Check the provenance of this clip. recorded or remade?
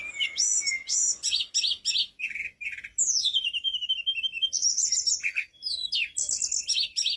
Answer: recorded